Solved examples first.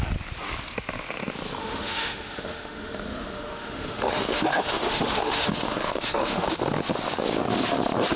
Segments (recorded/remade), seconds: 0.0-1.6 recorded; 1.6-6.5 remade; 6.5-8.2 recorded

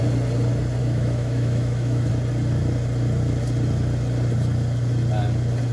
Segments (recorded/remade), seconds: 0.0-0.8 recorded; 0.8-2.1 remade; 2.1-5.7 recorded

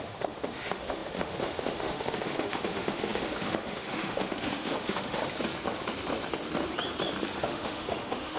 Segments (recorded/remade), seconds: 0.0-5.2 remade; 5.2-7.4 recorded; 7.4-8.4 remade

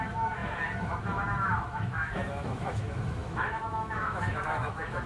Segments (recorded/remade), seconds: 0.0-5.1 remade

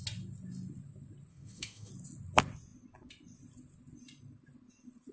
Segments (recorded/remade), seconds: 0.0-1.3 recorded; 1.3-1.9 remade; 1.9-5.1 recorded